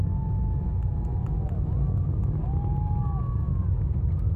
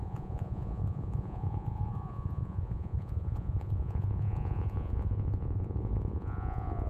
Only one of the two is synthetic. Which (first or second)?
second